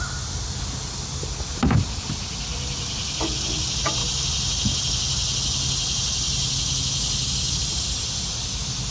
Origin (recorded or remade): recorded